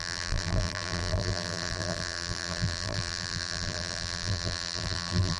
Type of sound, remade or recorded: remade